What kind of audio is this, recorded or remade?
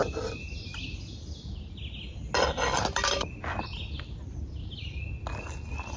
recorded